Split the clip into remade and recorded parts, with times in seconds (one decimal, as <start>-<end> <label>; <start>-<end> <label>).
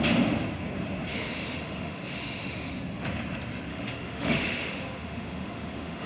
0.0-1.1 recorded; 1.1-2.7 remade; 2.7-3.7 recorded; 3.7-6.1 remade